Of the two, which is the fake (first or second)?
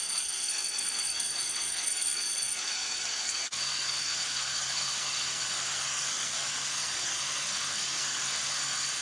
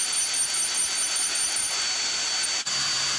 first